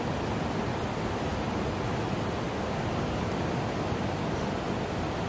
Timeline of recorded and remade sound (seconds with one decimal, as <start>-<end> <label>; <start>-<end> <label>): 0.0-5.3 recorded